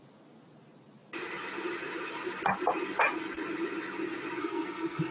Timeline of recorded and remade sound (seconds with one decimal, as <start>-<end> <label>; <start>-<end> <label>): 0.0-4.4 recorded; 4.4-5.1 remade